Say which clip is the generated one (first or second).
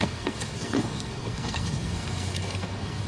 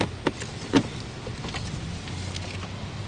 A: first